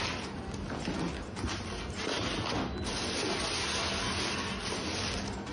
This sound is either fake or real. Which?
real